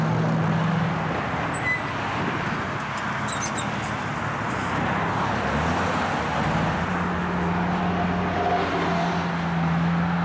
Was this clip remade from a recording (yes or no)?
no